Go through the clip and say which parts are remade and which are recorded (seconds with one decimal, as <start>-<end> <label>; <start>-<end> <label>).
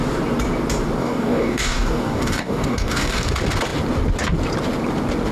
0.0-1.0 recorded; 1.0-3.3 remade; 3.3-5.3 recorded